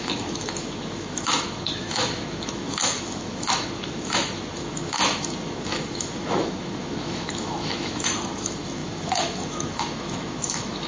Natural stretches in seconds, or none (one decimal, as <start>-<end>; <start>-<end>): none